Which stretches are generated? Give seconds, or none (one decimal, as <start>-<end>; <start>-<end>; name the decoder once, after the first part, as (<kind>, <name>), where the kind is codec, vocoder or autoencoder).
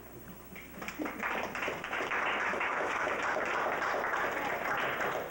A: 2.5-3.2 (autoencoder, DAC-VAE)